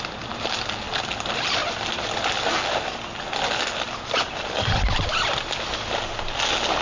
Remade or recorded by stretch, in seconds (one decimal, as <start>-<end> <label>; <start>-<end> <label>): 0.0-6.8 recorded